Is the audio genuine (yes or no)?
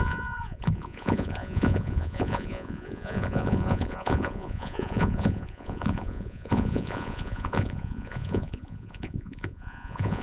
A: no